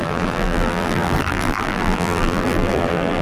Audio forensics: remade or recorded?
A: remade